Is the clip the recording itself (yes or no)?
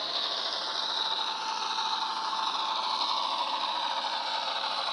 yes